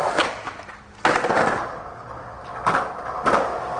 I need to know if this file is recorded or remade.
recorded